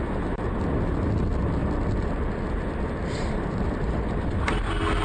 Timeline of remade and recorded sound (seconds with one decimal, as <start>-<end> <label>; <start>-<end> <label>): 0.0-1.6 recorded; 1.6-4.6 remade; 4.6-5.0 recorded